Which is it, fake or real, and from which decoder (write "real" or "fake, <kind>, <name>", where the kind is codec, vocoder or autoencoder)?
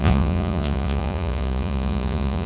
fake, vocoder, Vocos